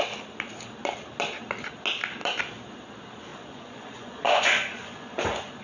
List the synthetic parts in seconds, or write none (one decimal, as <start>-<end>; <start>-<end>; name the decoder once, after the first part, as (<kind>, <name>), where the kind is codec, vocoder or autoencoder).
3.3-5.6 (vocoder, Vocos)